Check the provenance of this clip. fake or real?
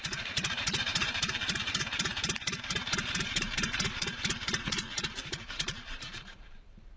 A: fake